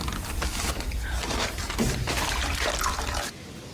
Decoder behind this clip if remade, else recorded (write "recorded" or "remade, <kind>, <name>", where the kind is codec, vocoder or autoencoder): remade, vocoder, BigVGAN v2